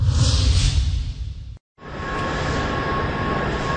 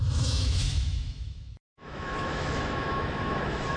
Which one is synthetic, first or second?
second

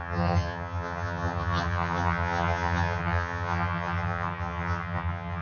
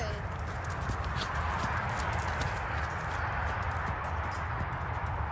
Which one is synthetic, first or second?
first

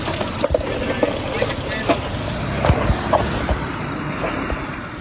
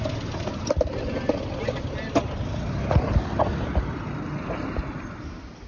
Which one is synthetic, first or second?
second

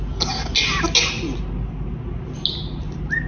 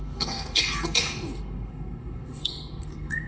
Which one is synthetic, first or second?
second